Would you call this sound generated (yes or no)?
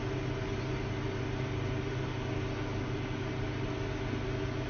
no